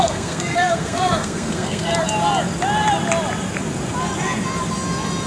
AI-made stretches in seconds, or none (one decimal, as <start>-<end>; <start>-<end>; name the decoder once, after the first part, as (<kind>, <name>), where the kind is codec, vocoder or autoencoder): 0.0-1.9 (codec, SNAC)

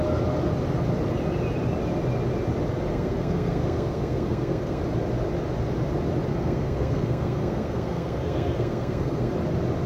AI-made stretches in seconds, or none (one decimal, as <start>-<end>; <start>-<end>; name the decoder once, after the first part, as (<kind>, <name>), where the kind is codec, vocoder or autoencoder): 2.9-4.8 (codec, SNAC); 6.3-9.3

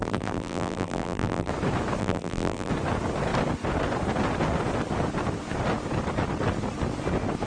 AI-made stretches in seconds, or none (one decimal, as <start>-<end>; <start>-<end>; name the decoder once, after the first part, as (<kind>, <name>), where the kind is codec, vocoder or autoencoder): 0.0-1.5 (vocoder, BigVGAN v2); 2.0-2.7

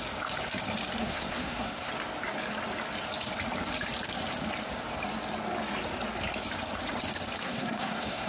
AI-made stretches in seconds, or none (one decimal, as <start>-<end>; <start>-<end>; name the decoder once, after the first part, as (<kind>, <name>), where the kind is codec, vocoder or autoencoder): 1.0-1.9 (codec, SNAC); 7.4-8.3

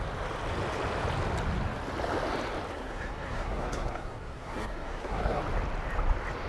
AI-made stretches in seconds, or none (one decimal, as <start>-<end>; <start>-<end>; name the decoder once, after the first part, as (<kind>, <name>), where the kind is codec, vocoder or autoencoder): 2.7-5.4 (codec, SNAC)

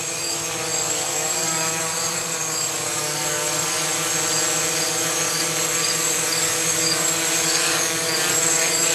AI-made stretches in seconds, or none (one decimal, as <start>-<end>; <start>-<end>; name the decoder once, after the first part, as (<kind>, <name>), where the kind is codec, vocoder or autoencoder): 0.0-4.1 (codec, DAC); 4.9-8.9

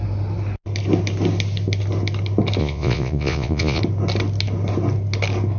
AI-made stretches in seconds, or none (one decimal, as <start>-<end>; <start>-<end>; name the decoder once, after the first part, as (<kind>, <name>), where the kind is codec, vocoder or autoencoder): 2.6-3.8 (vocoder, Vocos)

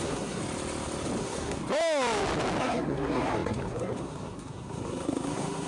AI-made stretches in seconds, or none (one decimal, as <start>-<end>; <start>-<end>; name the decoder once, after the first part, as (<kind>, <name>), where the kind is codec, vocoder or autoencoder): 0.0-0.4 (codec, SNAC); 1.2-1.6; 2.6-5.7